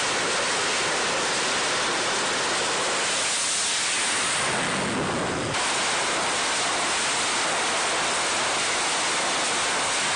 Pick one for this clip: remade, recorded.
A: recorded